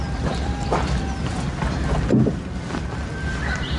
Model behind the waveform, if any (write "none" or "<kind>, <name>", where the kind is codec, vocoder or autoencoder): none